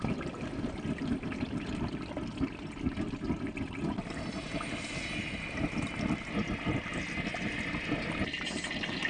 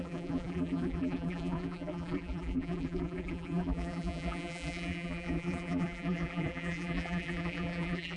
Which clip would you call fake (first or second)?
second